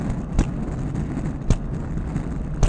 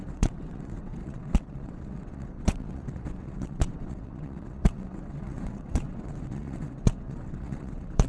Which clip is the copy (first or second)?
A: second